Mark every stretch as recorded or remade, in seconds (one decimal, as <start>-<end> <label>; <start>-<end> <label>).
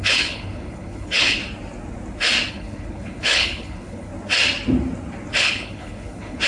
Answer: 0.0-1.4 remade; 1.4-2.5 recorded; 2.5-4.1 remade; 4.1-5.4 recorded; 5.4-6.5 remade